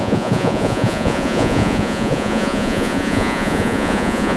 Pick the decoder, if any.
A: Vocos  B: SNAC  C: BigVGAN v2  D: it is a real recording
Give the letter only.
A